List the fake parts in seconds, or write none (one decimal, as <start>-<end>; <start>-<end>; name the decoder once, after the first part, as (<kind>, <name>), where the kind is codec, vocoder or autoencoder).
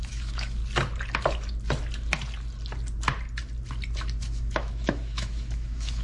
0.0-0.6 (autoencoder, DAC-VAE); 4.2-6.0